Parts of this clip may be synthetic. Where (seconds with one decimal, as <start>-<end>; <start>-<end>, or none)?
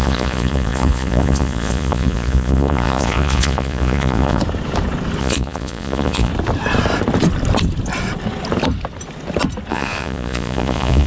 0.0-4.4; 5.2-6.3; 9.7-11.1